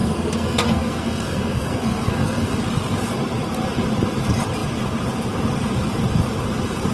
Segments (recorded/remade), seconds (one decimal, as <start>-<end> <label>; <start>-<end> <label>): 0.0-2.6 remade; 2.6-6.9 recorded